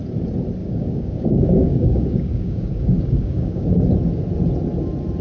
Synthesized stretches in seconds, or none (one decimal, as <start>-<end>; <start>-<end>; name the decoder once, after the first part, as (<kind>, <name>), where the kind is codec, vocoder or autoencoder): 0.6-3.7 (codec, DAC)